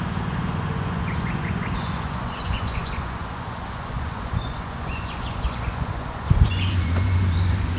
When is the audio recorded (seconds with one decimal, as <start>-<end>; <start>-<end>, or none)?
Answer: none